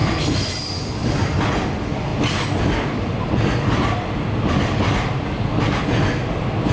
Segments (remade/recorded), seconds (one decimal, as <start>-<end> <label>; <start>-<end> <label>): 0.0-6.7 recorded